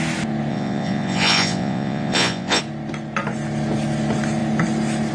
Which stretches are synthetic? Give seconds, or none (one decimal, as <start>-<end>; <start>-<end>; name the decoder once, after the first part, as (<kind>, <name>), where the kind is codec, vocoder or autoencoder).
0.5-2.6 (vocoder, Vocos)